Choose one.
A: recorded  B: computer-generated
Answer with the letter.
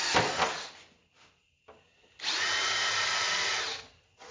A